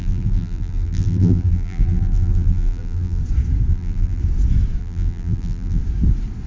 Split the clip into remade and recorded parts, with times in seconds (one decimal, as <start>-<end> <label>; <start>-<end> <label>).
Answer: 0.0-3.2 remade; 3.2-3.7 recorded; 3.7-4.2 remade; 4.2-4.8 recorded; 4.8-5.8 remade; 5.8-6.5 recorded